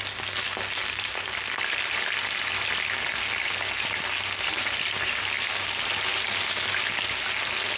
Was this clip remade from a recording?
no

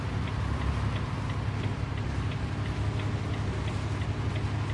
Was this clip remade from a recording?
no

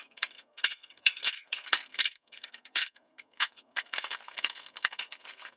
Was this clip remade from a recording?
yes